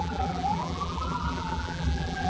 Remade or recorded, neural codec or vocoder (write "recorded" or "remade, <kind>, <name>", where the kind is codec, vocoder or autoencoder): remade, vocoder, BigVGAN v2